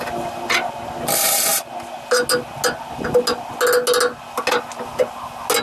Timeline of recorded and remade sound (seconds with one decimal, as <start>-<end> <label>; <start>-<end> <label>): 0.0-5.6 recorded